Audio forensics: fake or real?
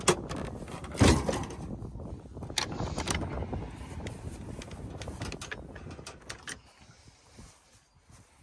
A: real